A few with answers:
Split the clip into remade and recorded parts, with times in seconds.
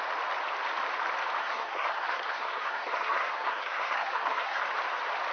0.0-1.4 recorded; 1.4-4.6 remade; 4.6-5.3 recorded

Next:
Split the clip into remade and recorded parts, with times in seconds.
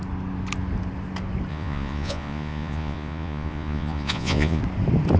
0.0-1.5 recorded; 1.5-4.6 remade; 4.6-5.2 recorded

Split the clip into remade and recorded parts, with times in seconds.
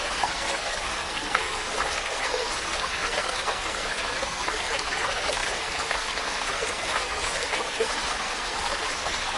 0.0-9.4 remade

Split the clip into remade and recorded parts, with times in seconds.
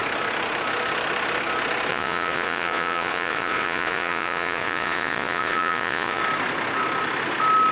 0.0-1.9 recorded; 1.9-6.2 remade; 6.2-7.7 recorded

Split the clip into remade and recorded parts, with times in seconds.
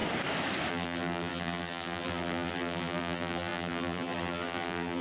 0.0-0.7 recorded; 0.7-5.0 remade